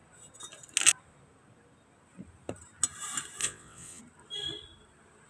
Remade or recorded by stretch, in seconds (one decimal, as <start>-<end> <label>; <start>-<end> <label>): 0.0-3.4 recorded; 3.4-4.0 remade; 4.0-5.3 recorded